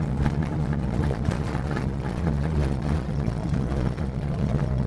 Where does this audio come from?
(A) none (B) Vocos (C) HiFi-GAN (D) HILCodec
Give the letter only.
B